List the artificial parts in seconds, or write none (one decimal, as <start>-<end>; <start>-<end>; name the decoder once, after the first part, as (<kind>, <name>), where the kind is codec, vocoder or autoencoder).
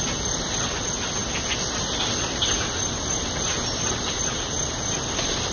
none